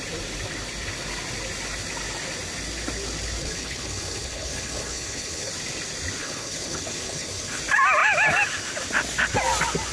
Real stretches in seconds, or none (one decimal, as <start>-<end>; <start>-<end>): 0.0-3.4; 5.5-6.2; 7.6-9.9